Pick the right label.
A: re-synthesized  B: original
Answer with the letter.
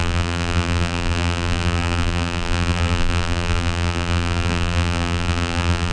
A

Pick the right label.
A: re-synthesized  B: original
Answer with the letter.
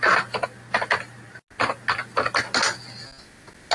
B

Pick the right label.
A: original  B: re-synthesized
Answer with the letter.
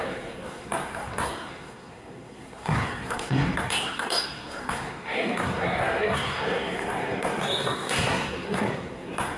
B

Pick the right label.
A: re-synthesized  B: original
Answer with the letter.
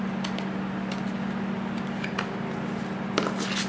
B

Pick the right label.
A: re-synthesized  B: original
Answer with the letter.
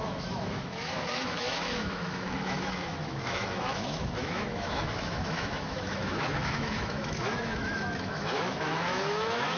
A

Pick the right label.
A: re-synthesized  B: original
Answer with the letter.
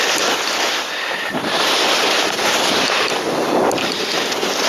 A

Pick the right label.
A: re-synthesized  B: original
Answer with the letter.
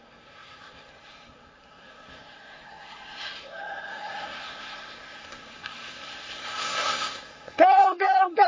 A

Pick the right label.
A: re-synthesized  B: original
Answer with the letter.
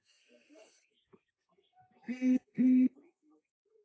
A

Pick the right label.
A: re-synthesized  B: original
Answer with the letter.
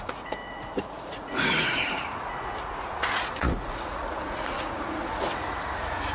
A